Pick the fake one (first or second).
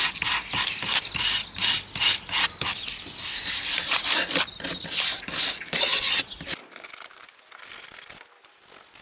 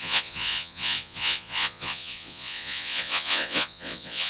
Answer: second